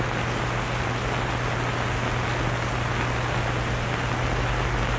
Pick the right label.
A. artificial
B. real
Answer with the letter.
B